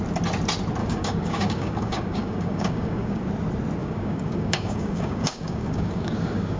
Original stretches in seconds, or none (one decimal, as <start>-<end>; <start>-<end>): 0.0-0.8; 3.2-3.8